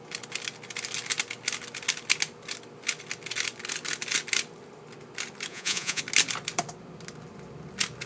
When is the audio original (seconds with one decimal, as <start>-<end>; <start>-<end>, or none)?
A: 0.0-5.5; 6.0-8.1